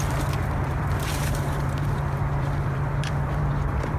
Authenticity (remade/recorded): remade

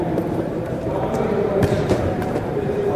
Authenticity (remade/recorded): remade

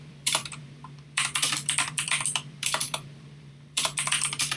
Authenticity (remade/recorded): remade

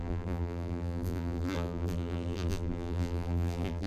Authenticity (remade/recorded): remade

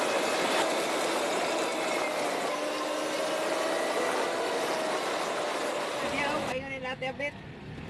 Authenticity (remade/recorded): recorded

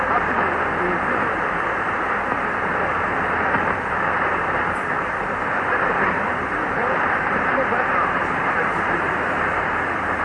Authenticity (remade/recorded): remade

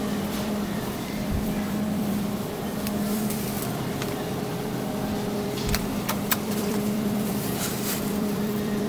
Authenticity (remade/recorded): remade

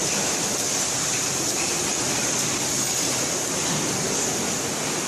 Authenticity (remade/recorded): recorded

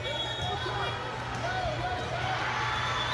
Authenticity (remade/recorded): recorded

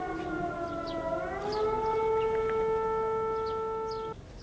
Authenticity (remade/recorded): recorded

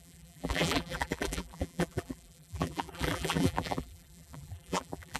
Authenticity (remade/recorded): remade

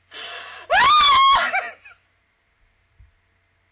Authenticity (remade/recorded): recorded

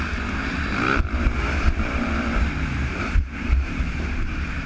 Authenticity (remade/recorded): remade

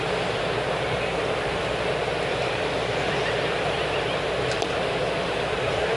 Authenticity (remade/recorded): remade